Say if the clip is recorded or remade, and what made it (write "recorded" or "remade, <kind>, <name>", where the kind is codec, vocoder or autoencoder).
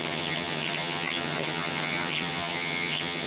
remade, vocoder, HiFi-GAN